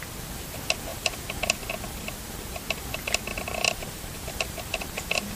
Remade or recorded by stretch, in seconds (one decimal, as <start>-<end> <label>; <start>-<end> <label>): 0.0-3.3 recorded; 3.3-4.3 remade; 4.3-5.4 recorded